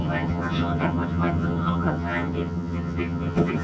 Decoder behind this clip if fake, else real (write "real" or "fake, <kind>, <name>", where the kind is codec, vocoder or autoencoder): fake, vocoder, HiFi-GAN